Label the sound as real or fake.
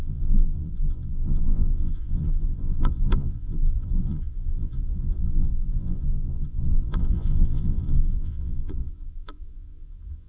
fake